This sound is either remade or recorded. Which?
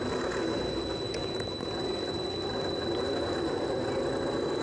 recorded